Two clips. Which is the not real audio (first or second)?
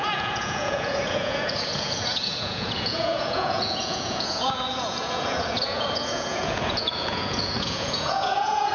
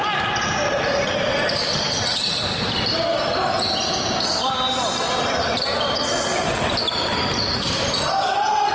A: first